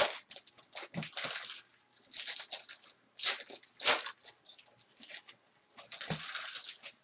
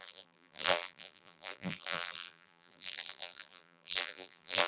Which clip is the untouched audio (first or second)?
first